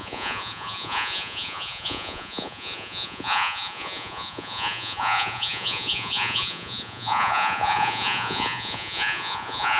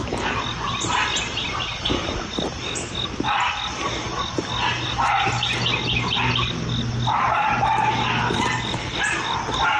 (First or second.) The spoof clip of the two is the first